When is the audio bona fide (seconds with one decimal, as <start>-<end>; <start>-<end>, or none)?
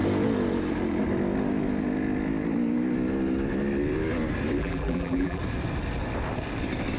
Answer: 0.0-4.6; 5.4-7.0